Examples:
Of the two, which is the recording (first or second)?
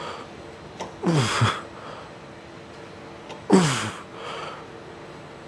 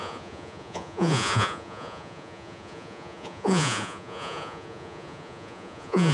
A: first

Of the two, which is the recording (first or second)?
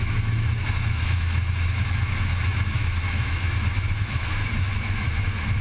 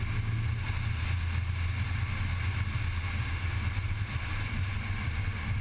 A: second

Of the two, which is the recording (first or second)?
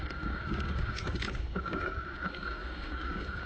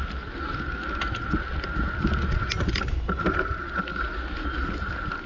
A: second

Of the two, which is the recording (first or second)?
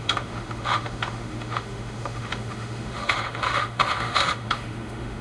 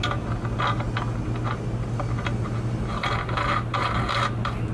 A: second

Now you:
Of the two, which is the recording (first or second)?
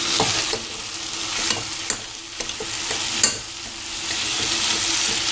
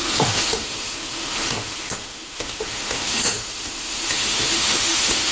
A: first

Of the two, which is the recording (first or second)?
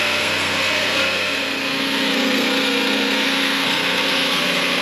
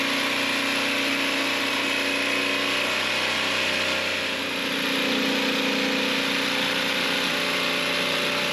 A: second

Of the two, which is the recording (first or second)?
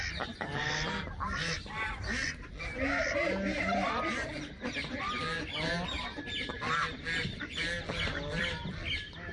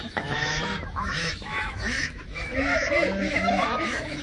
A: first